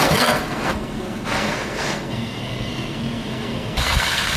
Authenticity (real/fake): fake